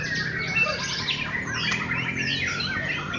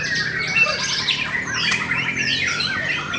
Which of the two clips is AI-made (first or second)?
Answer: second